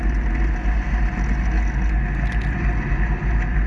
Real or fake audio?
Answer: real